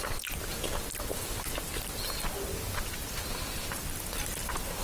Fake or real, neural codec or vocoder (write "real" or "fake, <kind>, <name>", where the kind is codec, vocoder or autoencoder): real